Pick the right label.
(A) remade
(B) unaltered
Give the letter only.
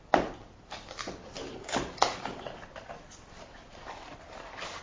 B